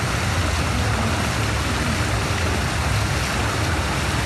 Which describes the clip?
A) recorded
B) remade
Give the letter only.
A